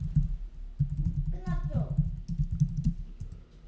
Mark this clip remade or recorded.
recorded